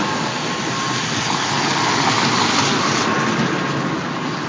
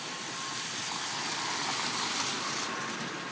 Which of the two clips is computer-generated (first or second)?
second